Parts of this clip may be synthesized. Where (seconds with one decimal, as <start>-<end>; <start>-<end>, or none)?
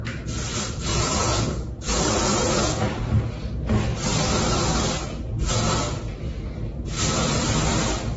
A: 0.9-3.0